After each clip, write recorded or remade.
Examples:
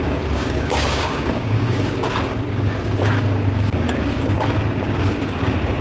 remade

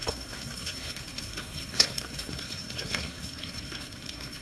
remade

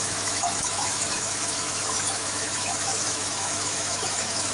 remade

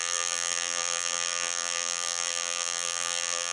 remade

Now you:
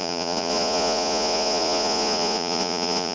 remade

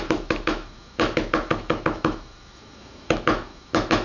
remade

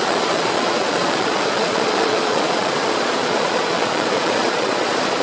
remade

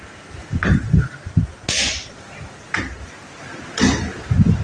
recorded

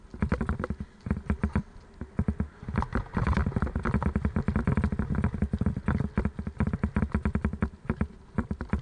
recorded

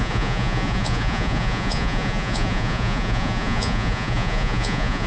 remade